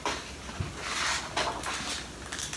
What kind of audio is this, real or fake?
real